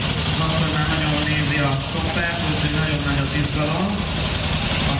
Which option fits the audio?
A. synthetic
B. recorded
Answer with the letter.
B